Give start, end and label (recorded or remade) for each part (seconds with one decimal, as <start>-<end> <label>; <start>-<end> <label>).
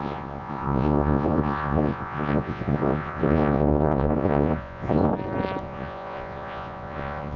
0.0-5.1 remade; 5.1-5.6 recorded; 5.6-7.4 remade